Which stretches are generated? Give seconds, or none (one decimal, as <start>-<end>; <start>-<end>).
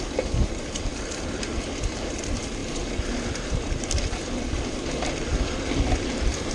0.0-2.6; 3.3-5.3; 6.0-6.5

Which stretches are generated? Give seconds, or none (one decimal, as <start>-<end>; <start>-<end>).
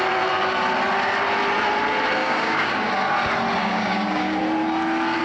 2.2-2.9; 3.6-4.4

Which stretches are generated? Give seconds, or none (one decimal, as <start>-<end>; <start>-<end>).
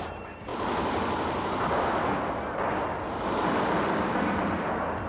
none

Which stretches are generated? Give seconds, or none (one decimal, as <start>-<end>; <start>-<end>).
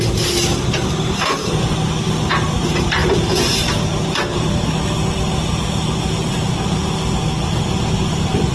none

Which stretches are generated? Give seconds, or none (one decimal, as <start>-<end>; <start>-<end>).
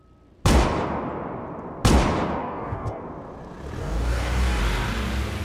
2.4-3.0; 3.8-4.6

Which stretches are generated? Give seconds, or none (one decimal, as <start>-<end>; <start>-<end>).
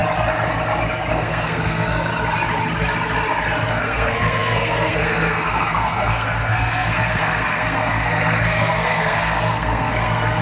1.1-2.1; 3.7-10.4